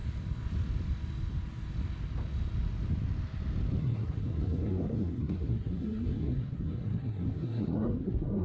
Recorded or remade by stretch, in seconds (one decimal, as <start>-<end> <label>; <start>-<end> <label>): 0.0-3.8 recorded; 3.8-8.4 remade